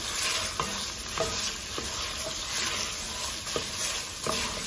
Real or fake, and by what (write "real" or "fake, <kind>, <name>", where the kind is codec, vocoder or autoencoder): real